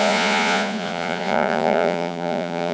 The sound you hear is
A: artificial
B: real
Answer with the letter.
A